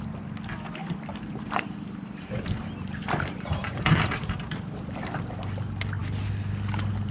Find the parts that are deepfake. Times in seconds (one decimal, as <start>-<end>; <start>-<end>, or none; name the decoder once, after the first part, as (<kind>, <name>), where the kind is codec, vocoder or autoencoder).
0.8-5.1 (vocoder, BigVGAN v2)